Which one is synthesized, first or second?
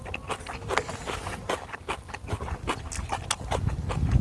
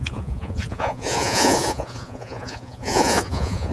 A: second